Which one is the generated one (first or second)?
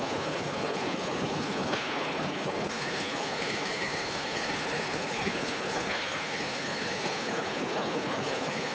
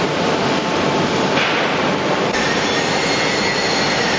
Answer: first